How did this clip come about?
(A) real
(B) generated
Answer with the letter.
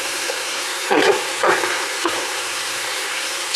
B